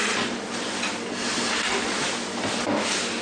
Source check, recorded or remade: recorded